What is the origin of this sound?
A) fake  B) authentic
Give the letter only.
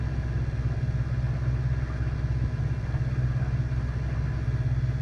B